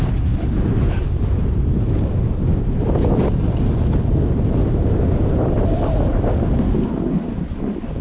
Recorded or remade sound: recorded